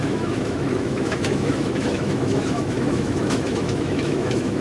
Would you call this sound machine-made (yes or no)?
yes